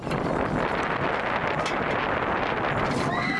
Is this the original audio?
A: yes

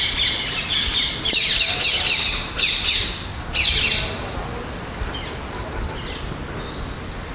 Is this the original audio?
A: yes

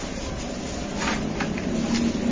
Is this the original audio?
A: yes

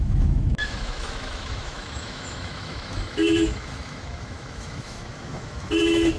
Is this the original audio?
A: no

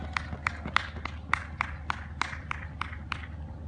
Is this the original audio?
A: yes